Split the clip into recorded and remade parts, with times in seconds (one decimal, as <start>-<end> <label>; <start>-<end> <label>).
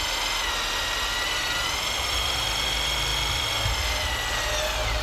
0.0-5.0 recorded